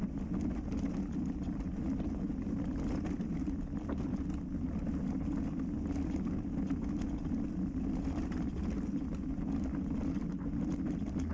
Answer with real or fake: real